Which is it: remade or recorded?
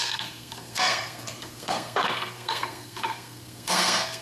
remade